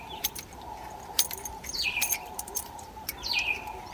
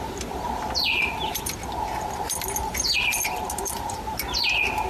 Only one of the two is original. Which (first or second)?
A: second